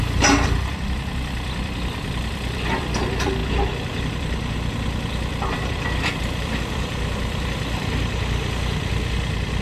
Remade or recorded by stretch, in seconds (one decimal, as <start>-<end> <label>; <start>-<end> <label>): 0.0-9.6 remade